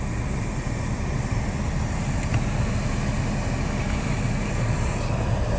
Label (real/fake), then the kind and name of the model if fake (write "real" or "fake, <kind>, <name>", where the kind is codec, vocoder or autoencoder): real